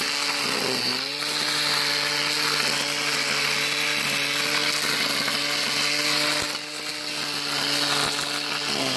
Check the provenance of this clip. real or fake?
real